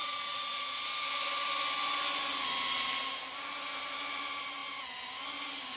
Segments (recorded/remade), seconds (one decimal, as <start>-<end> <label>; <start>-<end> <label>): 0.0-5.8 recorded